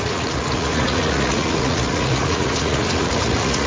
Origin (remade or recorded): remade